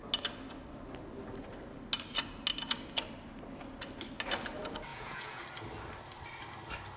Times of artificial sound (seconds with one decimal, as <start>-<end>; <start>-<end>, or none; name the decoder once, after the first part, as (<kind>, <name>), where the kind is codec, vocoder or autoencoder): 4.9-5.4 (vocoder, Vocos)